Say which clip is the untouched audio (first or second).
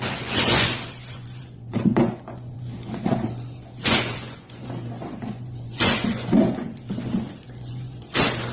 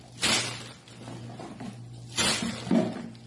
second